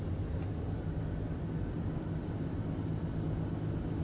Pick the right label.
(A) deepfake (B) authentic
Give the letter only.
B